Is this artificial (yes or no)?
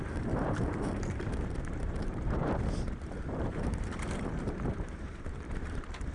yes